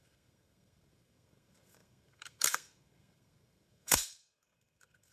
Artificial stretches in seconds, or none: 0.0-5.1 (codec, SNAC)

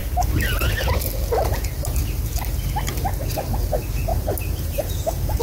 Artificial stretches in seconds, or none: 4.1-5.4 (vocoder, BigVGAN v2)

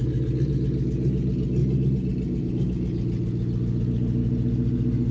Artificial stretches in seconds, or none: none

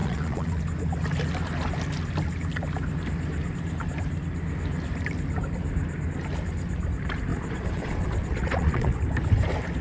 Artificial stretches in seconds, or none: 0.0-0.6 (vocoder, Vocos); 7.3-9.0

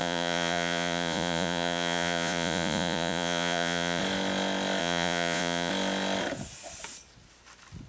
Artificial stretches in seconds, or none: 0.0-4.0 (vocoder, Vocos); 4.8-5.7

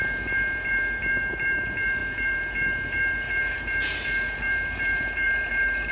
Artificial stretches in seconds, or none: 0.0-5.9 (vocoder, BigVGAN v2)